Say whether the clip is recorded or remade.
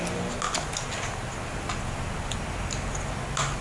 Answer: recorded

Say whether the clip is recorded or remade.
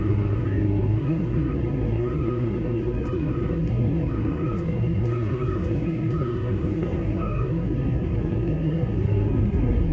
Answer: remade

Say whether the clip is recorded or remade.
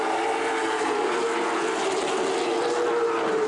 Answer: recorded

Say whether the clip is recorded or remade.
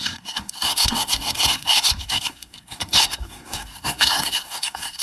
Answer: remade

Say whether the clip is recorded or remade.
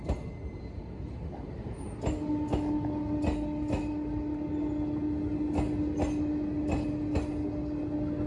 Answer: recorded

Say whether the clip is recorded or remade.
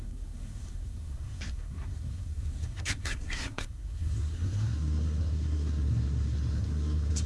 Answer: remade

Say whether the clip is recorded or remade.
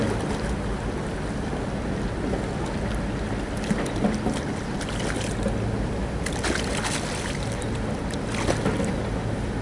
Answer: recorded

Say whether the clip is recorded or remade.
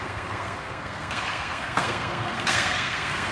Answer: remade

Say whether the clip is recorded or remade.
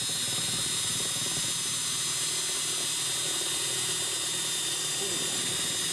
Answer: recorded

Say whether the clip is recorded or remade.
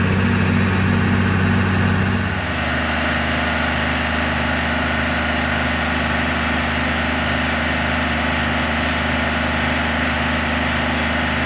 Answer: recorded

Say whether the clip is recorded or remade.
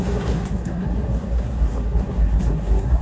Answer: remade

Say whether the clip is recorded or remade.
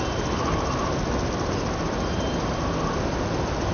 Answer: recorded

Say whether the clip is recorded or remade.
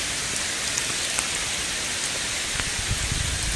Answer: recorded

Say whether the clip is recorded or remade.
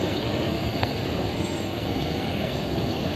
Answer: remade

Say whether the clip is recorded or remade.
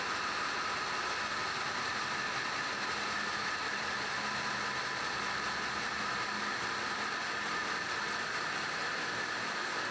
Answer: recorded